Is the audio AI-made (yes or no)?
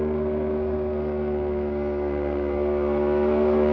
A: yes